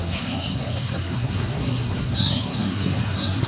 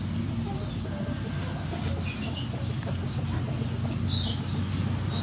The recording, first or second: second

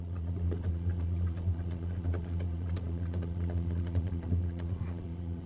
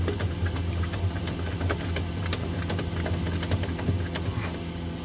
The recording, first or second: second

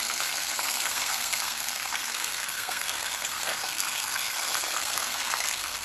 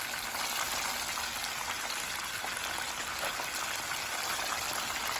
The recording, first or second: second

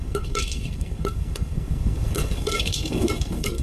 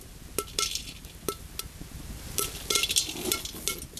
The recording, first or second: second